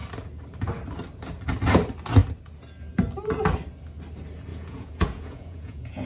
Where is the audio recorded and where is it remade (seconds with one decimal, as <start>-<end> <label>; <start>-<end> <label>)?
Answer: 0.0-4.5 recorded; 4.5-6.1 remade